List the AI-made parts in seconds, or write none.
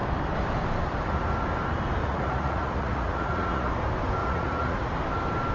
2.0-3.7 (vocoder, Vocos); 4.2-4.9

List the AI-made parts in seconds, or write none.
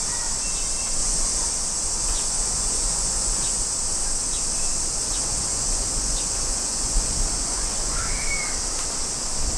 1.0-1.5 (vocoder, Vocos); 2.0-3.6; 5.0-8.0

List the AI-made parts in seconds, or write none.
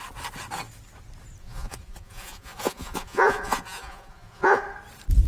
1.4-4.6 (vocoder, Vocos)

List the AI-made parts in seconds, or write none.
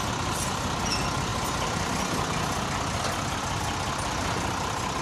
none